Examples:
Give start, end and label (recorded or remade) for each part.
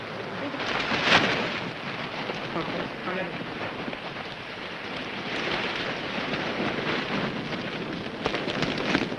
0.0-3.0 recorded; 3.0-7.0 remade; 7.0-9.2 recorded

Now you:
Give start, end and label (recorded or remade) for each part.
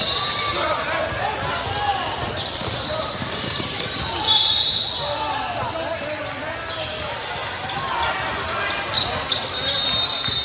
0.0-1.9 recorded; 1.9-5.0 remade; 5.0-7.4 recorded; 7.4-8.1 remade; 8.1-10.4 recorded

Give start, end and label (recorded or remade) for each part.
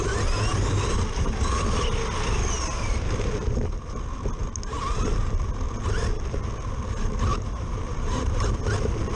0.0-7.3 recorded; 7.3-8.6 remade; 8.6-9.2 recorded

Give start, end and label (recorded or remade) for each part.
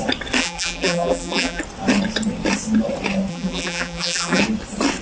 0.0-0.4 recorded; 0.4-1.6 remade; 1.6-3.3 recorded; 3.3-4.4 remade; 4.4-5.0 recorded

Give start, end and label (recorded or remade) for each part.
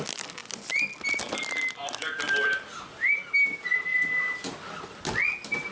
0.0-5.7 recorded